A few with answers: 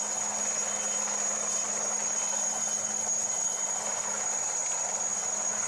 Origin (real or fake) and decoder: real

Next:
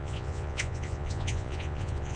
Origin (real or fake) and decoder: fake, vocoder, Vocos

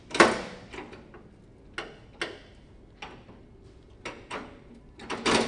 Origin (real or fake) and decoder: real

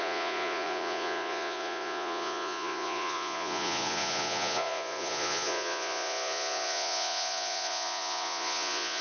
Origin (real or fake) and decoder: fake, vocoder, Vocos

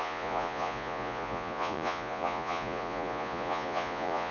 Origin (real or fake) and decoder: fake, vocoder, Vocos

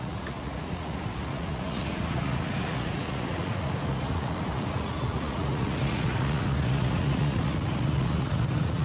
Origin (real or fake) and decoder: fake, vocoder, Vocos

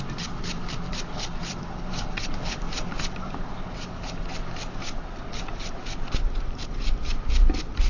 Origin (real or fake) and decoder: real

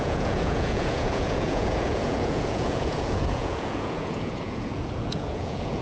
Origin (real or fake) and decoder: fake, vocoder, Vocos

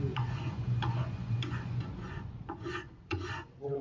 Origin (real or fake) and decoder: fake, vocoder, Vocos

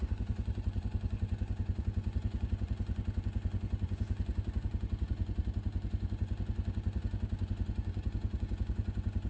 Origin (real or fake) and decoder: fake, vocoder, Vocos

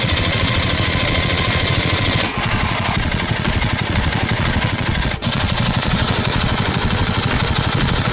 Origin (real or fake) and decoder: fake, vocoder, Vocos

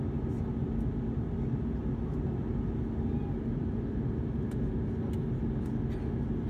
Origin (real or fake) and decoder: real